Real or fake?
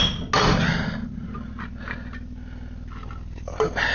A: real